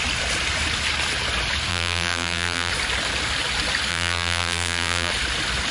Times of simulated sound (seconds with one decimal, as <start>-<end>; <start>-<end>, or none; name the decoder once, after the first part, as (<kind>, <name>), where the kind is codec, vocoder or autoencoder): 1.7-2.7 (vocoder, BigVGAN v2); 3.9-5.1